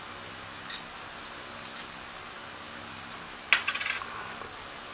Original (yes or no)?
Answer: yes